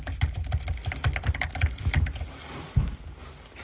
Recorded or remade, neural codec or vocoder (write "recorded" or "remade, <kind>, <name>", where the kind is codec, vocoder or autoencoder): recorded